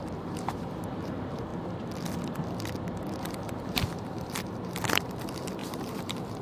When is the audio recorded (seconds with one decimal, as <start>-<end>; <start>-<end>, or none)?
1.5-2.9